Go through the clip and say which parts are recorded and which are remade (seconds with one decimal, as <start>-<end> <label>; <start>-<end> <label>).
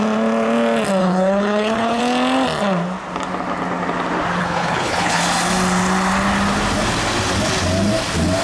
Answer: 0.0-1.0 recorded; 1.0-2.0 remade; 2.0-4.4 recorded; 4.4-5.2 remade; 5.2-8.4 recorded